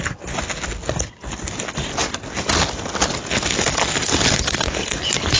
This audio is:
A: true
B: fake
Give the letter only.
A